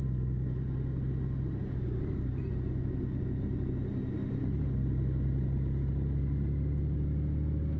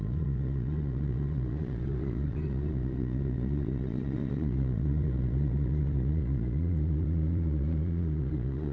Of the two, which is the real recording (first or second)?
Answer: first